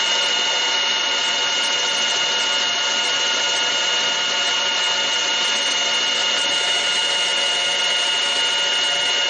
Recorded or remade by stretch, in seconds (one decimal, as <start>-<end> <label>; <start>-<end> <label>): 0.0-6.2 recorded; 6.2-6.9 remade; 6.9-9.3 recorded